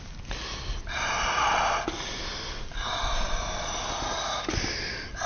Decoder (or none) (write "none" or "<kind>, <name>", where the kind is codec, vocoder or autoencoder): none